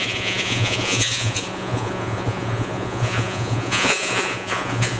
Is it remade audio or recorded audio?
remade